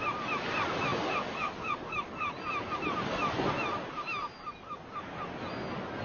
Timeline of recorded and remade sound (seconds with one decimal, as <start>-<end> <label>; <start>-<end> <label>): 0.0-6.0 recorded